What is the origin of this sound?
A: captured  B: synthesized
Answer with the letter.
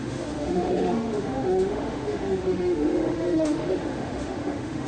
B